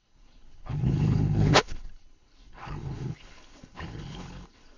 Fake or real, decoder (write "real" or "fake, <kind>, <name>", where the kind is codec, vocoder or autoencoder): fake, codec, HILCodec